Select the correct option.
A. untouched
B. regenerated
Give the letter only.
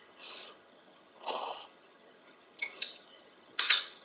B